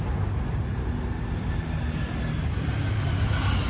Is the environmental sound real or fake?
real